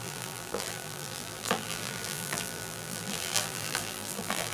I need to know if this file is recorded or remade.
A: remade